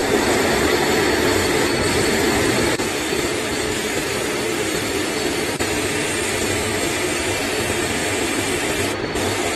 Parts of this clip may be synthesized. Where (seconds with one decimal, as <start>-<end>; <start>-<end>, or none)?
0.0-0.7; 1.4-5.0; 6.7-7.4; 8.0-9.6